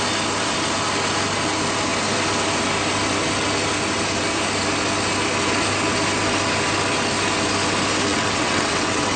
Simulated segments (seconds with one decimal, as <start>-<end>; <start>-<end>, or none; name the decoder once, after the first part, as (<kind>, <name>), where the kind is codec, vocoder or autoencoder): 8.1-9.2 (vocoder, WaveNeXt)